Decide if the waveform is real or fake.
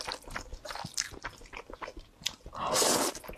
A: real